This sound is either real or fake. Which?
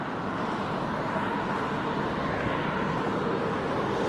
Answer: real